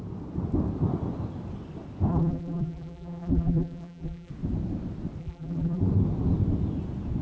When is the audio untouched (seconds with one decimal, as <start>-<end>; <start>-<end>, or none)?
0.0-2.1; 4.3-5.2; 5.8-7.2